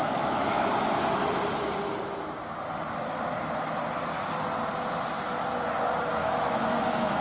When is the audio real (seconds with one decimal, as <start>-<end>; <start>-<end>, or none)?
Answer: 0.7-6.2

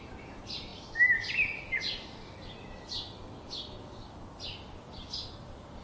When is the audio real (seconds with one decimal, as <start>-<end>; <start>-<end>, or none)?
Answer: 0.0-5.8

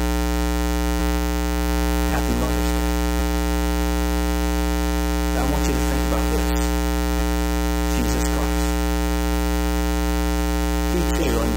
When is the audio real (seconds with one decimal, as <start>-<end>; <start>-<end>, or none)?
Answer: 0.0-1.0; 2.1-11.6

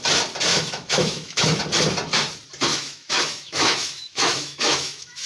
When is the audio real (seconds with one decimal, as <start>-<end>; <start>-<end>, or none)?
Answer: 0.0-0.5; 1.6-2.7

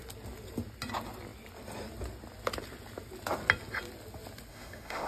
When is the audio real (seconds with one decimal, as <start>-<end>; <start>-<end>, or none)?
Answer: 0.0-4.5

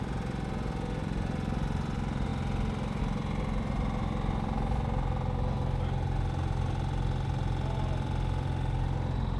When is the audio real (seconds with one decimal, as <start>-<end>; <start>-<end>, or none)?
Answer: 0.0-9.4

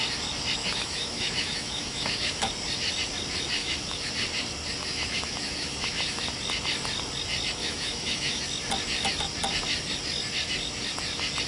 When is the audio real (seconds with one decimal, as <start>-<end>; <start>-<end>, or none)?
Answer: 0.0-0.6; 2.5-3.6; 4.1-4.8; 6.2-7.6; 8.4-11.5